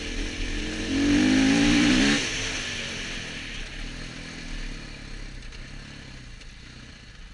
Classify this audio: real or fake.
real